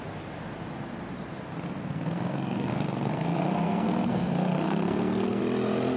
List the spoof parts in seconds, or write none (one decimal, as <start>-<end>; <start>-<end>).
1.8-5.4